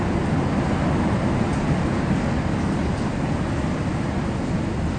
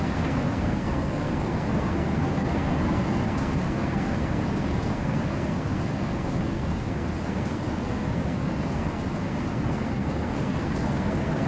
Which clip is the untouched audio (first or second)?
first